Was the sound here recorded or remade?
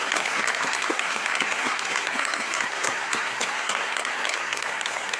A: remade